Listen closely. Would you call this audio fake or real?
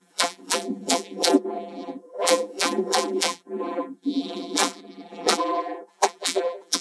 fake